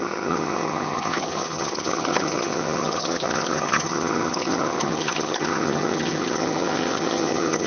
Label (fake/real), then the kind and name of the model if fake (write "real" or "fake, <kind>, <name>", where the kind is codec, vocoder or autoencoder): fake, vocoder, HiFi-GAN